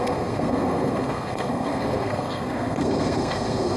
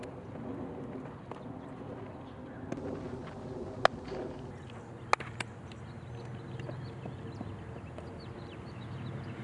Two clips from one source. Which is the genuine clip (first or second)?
second